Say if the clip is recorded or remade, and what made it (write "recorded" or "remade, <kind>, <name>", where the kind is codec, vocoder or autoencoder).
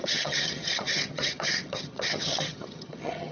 remade, vocoder, HiFi-GAN